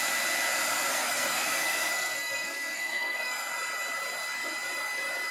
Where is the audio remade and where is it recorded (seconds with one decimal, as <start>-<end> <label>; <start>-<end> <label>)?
0.0-0.9 recorded; 0.9-3.5 remade; 3.5-5.3 recorded